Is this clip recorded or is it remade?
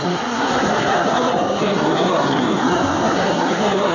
remade